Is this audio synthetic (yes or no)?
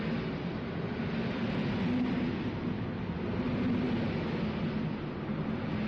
no